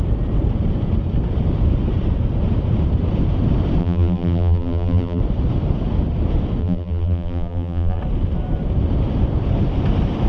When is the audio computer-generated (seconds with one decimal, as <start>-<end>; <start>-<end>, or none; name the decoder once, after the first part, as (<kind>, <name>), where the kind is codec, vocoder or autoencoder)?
3.8-5.2 (vocoder, BigVGAN v2); 6.6-8.0